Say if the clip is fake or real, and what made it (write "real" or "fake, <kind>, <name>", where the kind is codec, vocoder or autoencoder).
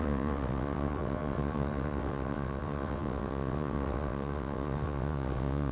fake, vocoder, WaveNeXt